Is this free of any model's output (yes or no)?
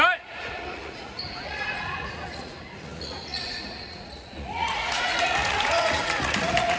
no